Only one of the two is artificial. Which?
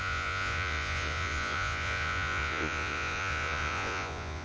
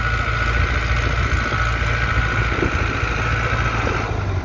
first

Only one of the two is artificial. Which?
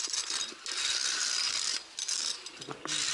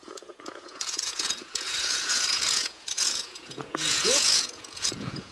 second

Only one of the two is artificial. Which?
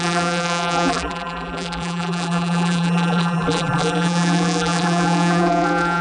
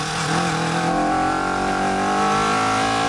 first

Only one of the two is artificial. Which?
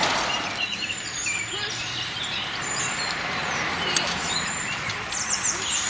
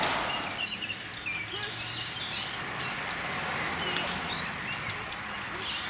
first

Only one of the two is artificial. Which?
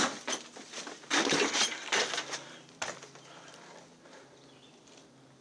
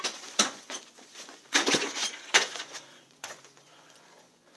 second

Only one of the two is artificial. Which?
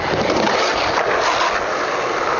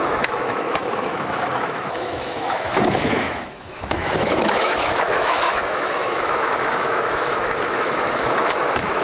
second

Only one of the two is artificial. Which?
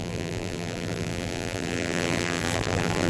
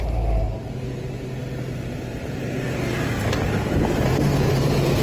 first